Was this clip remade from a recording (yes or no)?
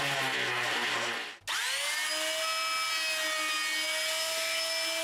no